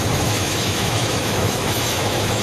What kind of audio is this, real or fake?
fake